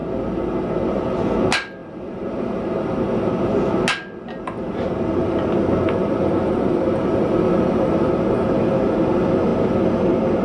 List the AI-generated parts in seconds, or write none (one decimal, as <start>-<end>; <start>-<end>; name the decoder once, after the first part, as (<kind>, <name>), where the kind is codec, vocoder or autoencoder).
1.8-3.3 (vocoder, BigVGAN v2); 5.2-8.1